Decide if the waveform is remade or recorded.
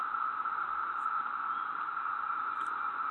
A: recorded